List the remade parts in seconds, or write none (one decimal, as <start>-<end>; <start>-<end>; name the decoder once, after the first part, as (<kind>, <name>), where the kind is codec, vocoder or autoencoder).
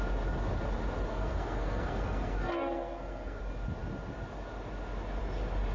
1.1-3.4 (codec, SNAC)